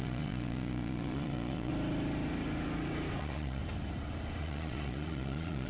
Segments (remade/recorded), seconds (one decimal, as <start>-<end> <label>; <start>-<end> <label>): 0.0-1.7 remade; 1.7-3.2 recorded; 3.2-3.6 remade; 3.6-4.4 recorded; 4.4-5.7 remade